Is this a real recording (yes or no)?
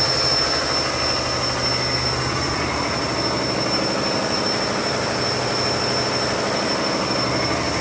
yes